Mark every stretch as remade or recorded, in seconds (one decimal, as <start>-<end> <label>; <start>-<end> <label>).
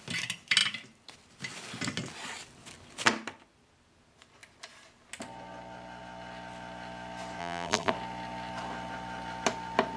0.0-7.4 recorded; 7.4-7.9 remade; 7.9-10.0 recorded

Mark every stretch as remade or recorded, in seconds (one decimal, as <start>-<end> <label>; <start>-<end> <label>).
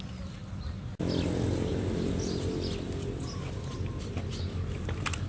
0.0-0.4 recorded; 0.4-0.9 remade; 0.9-1.7 recorded; 1.7-2.5 remade; 2.5-5.3 recorded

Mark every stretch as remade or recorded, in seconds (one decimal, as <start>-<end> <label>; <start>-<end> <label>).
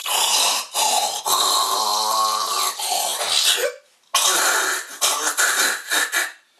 0.0-1.2 remade; 1.2-6.6 recorded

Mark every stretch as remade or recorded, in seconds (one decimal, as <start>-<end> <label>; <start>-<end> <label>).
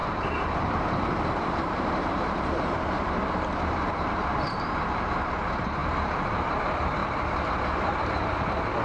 0.0-5.1 remade; 5.1-5.8 recorded; 5.8-6.6 remade; 6.6-7.0 recorded; 7.0-8.0 remade; 8.0-8.8 recorded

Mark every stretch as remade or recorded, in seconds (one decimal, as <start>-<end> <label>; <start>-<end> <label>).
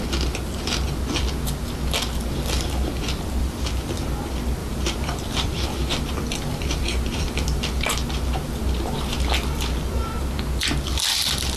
0.0-3.4 recorded; 3.4-4.0 remade; 4.0-4.6 recorded; 4.6-7.6 remade; 7.6-11.6 recorded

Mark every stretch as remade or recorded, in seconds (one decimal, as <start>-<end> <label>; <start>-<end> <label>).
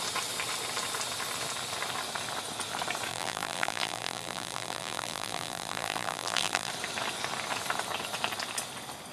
0.0-3.1 recorded; 3.1-6.7 remade; 6.7-9.1 recorded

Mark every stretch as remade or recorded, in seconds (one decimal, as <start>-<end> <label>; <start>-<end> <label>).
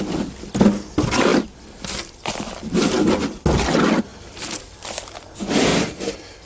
0.0-5.7 recorded; 5.7-6.5 remade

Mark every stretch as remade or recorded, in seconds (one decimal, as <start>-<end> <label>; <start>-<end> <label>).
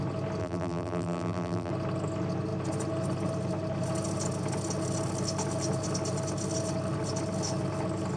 0.0-0.4 recorded; 0.4-1.7 remade; 1.7-8.2 recorded